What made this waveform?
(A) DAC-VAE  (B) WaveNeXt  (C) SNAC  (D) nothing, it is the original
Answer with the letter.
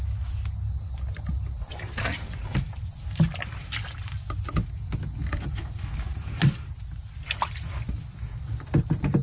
D